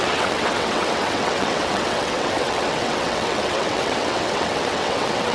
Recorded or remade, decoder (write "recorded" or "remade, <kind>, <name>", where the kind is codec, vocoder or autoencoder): remade, vocoder, WaveNeXt